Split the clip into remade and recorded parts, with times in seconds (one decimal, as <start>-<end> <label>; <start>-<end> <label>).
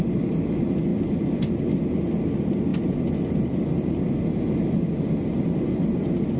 0.0-0.9 recorded; 0.9-1.5 remade; 1.5-2.7 recorded; 2.7-3.6 remade; 3.6-6.4 recorded